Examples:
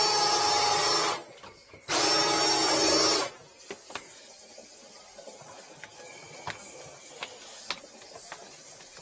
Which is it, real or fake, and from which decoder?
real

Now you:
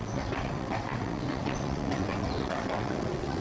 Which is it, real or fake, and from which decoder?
fake, vocoder, WaveNeXt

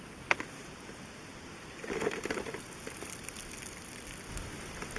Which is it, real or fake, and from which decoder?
real